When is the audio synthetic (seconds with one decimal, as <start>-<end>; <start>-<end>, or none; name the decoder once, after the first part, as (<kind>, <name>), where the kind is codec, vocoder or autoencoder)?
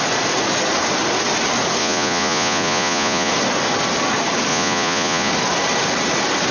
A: 1.8-3.3 (vocoder, Vocos); 4.5-5.3